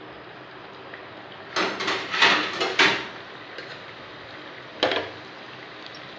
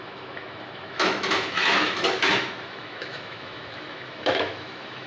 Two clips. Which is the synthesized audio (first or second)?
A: second